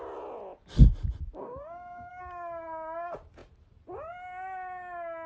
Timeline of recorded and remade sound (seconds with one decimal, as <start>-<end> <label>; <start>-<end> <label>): 0.0-1.4 recorded; 1.4-2.1 remade; 2.1-5.3 recorded